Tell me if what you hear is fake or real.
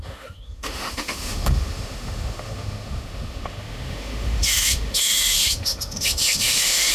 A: fake